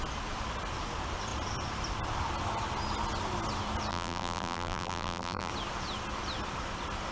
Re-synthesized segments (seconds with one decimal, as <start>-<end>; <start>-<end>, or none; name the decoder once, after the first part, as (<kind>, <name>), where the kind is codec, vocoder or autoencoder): 3.9-5.5 (vocoder, BigVGAN v2)